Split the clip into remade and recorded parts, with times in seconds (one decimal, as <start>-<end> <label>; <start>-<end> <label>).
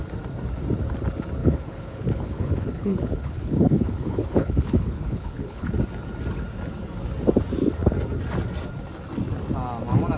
0.0-1.4 recorded; 1.4-5.8 remade; 5.8-10.2 recorded